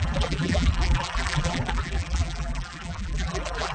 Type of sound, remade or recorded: remade